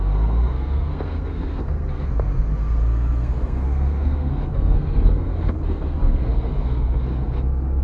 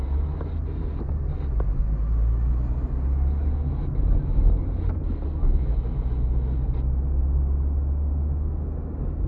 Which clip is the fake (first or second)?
first